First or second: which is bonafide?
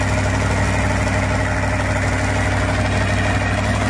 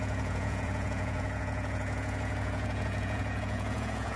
first